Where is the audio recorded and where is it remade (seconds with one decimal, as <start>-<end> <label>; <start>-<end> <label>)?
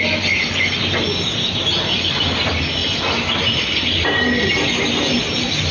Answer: 0.0-5.7 recorded